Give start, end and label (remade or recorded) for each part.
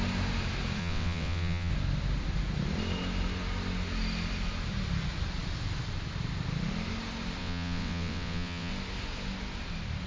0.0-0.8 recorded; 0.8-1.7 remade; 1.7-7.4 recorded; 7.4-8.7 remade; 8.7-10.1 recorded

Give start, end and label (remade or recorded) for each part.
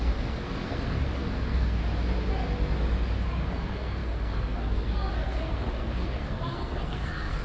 0.0-1.8 remade; 1.8-3.4 recorded; 3.4-7.4 remade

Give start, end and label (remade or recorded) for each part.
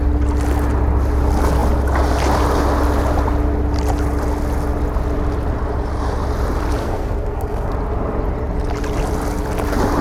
0.0-6.8 recorded; 6.8-7.7 remade; 7.7-10.0 recorded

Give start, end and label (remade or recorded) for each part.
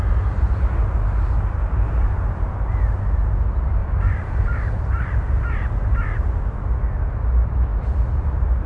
0.0-1.6 recorded; 1.6-3.0 remade; 3.0-3.8 recorded; 3.8-6.4 remade; 6.4-8.7 recorded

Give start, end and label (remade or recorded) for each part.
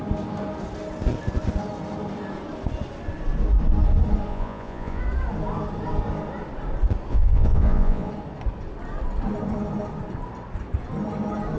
0.0-4.3 recorded; 4.3-5.0 remade; 5.0-7.1 recorded; 7.1-8.1 remade; 8.1-11.6 recorded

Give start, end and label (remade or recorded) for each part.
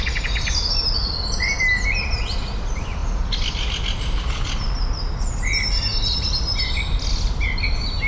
0.0-8.1 recorded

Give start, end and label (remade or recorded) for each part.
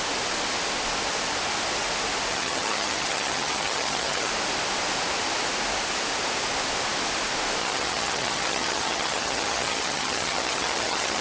0.0-2.3 recorded; 2.3-4.3 remade; 4.3-7.6 recorded; 7.6-11.2 remade